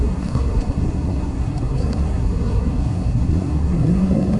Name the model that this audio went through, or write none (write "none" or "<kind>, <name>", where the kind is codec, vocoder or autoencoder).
codec, SNAC